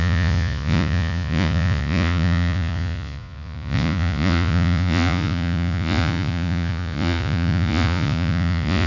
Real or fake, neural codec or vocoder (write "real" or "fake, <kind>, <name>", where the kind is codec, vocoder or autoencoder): fake, vocoder, Vocos